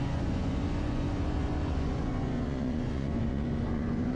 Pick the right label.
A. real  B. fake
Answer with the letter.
B